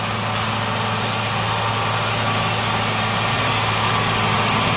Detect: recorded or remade recorded